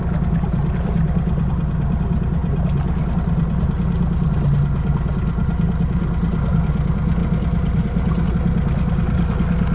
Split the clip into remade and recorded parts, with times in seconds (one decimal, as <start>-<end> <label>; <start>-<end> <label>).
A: 0.0-9.7 recorded